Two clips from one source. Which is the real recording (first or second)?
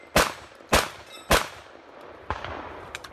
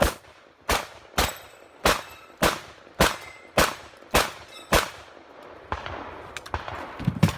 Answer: first